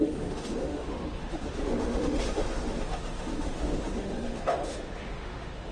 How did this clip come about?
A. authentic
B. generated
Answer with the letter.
B